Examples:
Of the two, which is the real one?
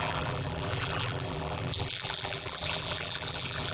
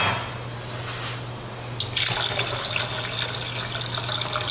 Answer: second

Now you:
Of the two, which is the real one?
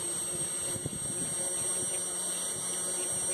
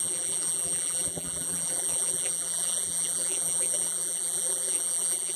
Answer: first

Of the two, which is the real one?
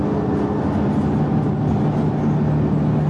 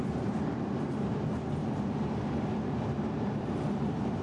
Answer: first